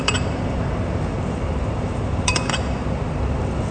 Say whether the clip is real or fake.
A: fake